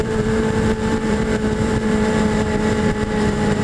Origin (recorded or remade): remade